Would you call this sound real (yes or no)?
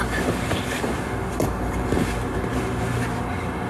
yes